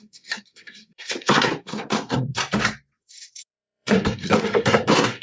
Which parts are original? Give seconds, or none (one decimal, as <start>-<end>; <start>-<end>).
2.4-3.0